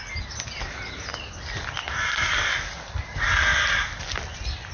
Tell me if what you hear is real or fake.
real